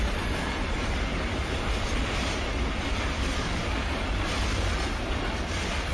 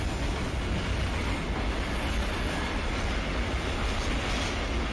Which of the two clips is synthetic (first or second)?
first